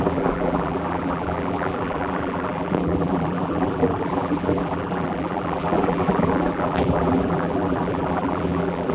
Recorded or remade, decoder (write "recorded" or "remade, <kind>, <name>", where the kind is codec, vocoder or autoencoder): remade, vocoder, BigVGAN v2